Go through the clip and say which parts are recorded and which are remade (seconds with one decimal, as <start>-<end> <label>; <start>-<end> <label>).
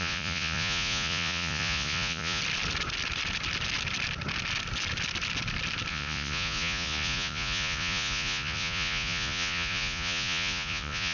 0.0-2.4 remade; 2.4-5.9 recorded; 5.9-11.1 remade